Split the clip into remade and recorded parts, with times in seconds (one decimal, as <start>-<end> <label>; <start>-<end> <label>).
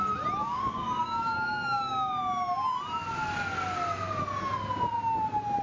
0.0-0.4 recorded; 0.4-2.1 remade; 2.1-5.6 recorded